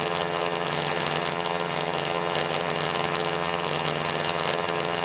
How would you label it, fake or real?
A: fake